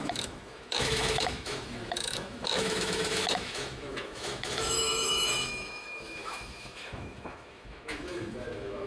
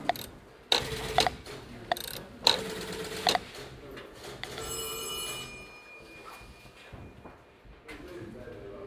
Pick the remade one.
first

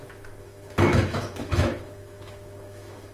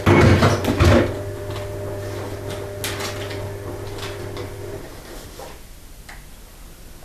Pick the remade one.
first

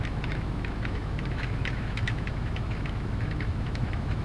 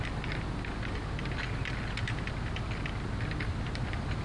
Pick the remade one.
first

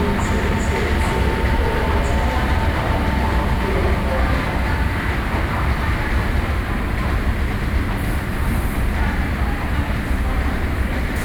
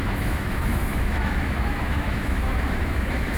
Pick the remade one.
second